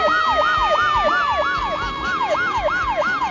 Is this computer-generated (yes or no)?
no